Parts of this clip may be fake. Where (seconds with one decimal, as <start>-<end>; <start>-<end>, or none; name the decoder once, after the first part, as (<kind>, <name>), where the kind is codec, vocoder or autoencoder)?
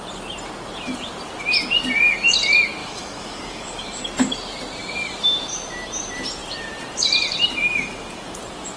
2.8-4.0 (autoencoder, DAC-VAE)